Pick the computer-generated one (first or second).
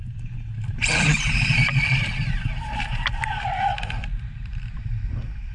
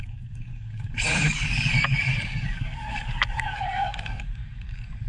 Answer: second